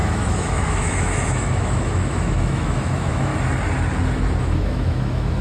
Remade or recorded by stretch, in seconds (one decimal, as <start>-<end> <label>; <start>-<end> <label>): 0.0-3.3 remade; 3.3-4.4 recorded; 4.4-5.4 remade